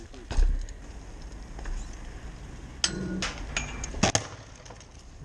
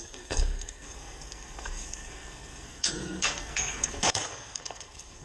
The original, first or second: first